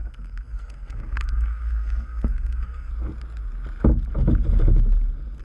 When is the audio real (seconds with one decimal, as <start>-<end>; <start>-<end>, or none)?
2.9-5.4